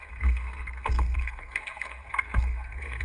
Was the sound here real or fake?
fake